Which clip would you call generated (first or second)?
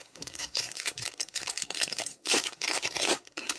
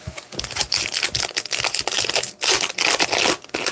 first